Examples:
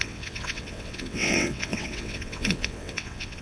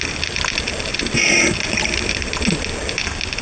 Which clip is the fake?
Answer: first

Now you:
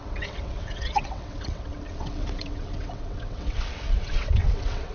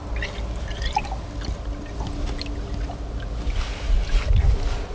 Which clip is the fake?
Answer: first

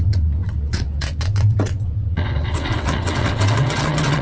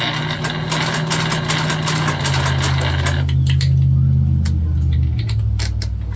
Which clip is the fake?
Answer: first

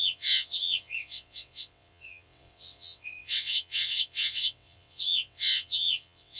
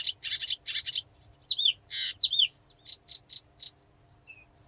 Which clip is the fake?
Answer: first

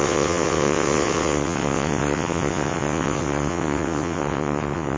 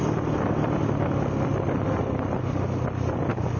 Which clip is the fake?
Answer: first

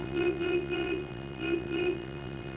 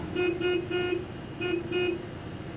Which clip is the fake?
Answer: first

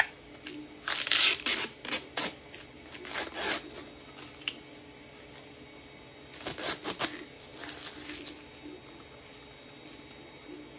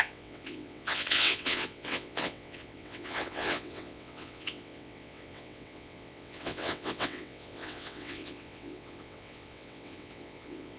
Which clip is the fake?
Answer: second